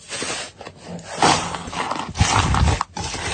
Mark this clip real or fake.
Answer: real